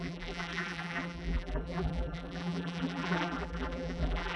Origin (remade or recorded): remade